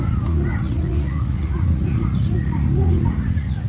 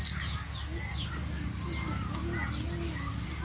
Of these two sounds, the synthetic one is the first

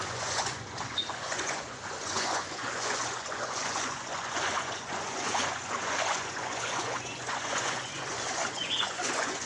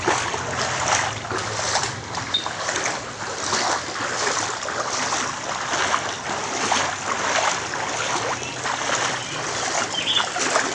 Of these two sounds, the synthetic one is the first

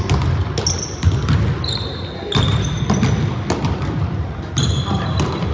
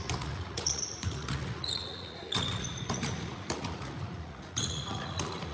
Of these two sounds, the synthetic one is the second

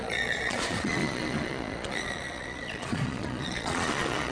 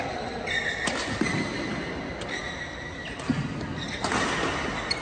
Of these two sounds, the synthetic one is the first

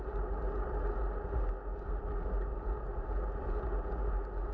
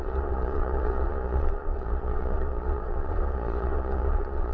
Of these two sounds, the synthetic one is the second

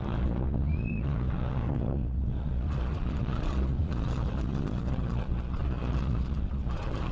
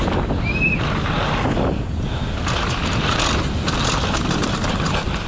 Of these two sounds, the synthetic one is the first